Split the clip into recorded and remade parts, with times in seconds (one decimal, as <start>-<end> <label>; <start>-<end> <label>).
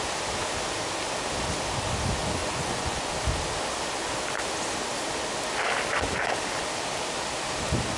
0.0-2.4 recorded; 2.4-3.1 remade; 3.1-8.0 recorded